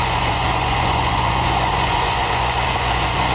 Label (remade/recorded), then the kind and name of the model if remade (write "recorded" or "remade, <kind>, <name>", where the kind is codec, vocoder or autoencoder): remade, vocoder, Vocos